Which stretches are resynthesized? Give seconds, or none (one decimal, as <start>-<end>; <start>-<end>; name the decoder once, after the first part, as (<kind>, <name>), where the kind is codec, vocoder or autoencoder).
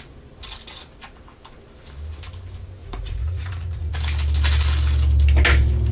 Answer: 2.8-3.9 (vocoder, Vocos)